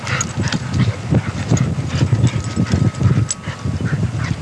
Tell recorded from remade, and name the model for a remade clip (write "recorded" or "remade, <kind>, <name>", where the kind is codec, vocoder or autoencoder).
recorded